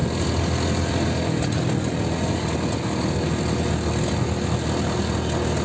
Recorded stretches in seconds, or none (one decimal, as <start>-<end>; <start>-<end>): 0.0-5.6